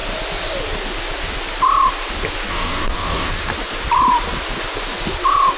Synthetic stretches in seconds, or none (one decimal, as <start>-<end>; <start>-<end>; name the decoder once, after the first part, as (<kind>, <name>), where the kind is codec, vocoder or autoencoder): 2.5-3.3 (codec, DAC)